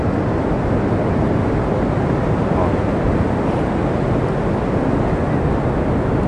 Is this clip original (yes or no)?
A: yes